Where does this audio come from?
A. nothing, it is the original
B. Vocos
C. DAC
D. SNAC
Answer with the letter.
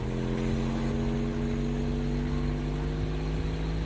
A